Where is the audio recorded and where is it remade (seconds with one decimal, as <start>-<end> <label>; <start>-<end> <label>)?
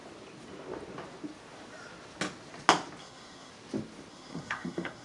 0.0-3.0 recorded; 3.0-3.5 remade; 3.5-4.1 recorded; 4.1-5.0 remade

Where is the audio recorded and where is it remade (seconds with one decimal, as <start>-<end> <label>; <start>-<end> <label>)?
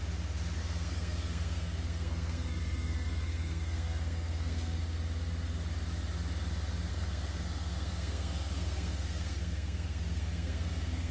0.0-0.6 recorded; 0.6-4.8 remade; 4.8-6.9 recorded; 6.9-11.1 remade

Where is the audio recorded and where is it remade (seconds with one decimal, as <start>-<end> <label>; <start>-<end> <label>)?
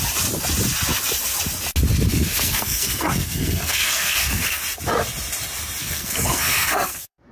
0.0-2.1 recorded; 2.1-4.6 remade; 4.6-5.8 recorded; 5.8-7.3 remade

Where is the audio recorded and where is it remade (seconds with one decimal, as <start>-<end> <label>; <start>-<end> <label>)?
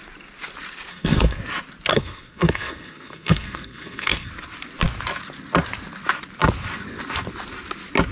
0.0-0.9 recorded; 0.9-1.4 remade; 1.4-1.9 recorded; 1.9-4.3 remade; 4.3-8.1 recorded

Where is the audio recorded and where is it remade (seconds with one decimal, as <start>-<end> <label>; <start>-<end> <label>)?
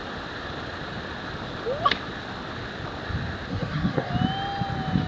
0.0-3.5 recorded; 3.5-4.1 remade; 4.1-5.1 recorded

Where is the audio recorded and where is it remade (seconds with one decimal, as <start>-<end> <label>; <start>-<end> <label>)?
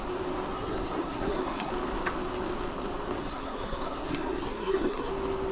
0.0-0.5 recorded; 0.5-1.7 remade; 1.7-3.2 recorded; 3.2-5.1 remade; 5.1-5.5 recorded